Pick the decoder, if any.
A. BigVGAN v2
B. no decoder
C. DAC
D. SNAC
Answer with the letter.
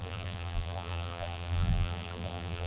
A